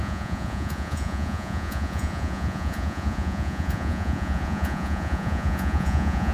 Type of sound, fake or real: fake